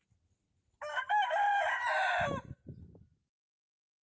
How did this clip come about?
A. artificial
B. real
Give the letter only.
B